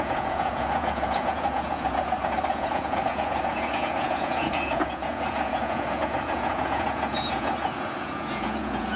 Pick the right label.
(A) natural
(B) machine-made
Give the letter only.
B